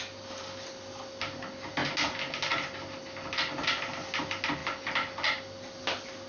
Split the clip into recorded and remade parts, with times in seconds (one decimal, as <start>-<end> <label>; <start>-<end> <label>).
0.0-6.3 recorded